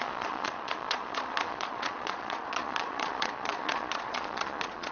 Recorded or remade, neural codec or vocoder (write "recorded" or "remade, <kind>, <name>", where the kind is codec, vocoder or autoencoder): remade, vocoder, Vocos